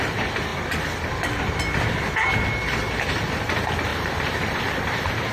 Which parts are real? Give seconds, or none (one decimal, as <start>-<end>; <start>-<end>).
0.0-2.6; 3.2-3.9; 4.6-5.3